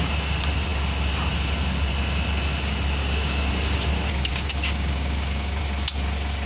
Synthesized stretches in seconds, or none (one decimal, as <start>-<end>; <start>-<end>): 3.0-3.5; 4.3-5.6